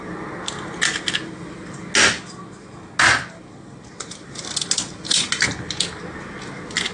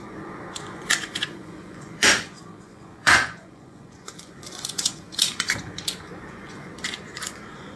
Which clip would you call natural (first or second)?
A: first